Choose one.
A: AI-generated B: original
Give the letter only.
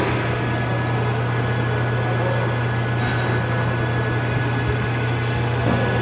B